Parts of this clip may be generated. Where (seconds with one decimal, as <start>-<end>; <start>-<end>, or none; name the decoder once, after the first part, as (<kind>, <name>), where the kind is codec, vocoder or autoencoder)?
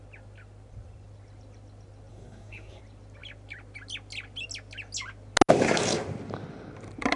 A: 2.1-2.8 (codec, SNAC)